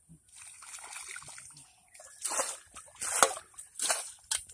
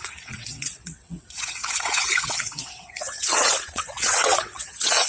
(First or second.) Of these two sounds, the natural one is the first